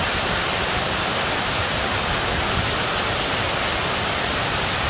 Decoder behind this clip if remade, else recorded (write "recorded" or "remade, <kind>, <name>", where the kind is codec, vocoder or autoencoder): recorded